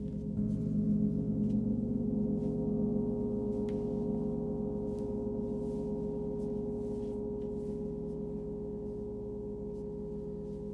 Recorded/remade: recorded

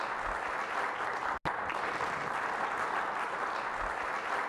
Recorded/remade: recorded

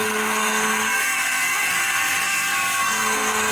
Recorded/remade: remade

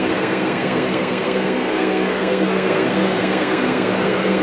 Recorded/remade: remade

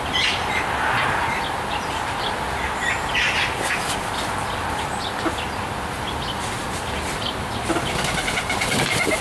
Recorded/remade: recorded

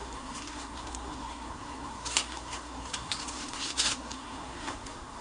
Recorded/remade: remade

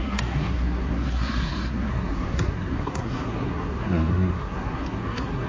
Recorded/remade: remade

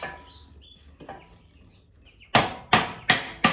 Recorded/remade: recorded